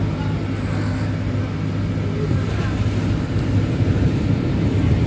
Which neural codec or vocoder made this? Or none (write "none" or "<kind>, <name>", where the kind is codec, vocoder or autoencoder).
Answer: none